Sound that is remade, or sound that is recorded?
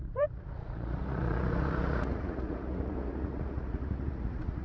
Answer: remade